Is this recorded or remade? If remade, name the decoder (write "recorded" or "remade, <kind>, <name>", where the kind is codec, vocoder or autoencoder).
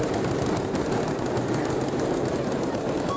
recorded